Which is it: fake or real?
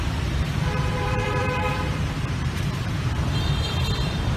fake